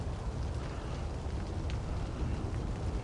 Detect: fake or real real